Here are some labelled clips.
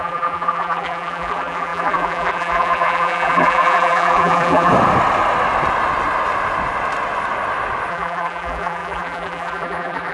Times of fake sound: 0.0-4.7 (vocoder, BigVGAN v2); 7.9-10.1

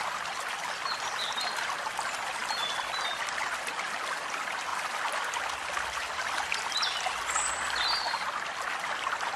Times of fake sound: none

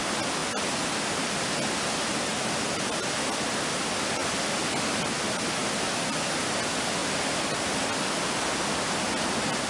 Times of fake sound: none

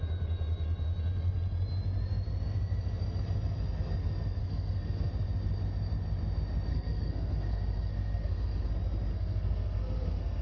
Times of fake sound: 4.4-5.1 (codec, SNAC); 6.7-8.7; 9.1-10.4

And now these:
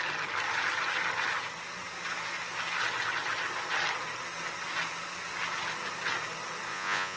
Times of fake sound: 6.7-7.2 (vocoder, Vocos)

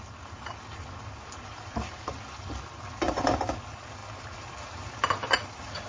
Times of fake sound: 1.5-2.1 (vocoder, BigVGAN v2)